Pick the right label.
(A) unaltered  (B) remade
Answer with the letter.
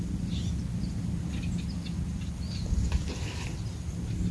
A